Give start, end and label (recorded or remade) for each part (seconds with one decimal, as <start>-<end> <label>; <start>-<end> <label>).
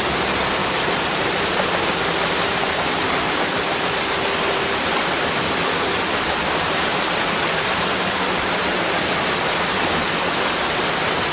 0.0-0.6 recorded; 0.6-3.9 remade; 3.9-6.9 recorded; 6.9-11.3 remade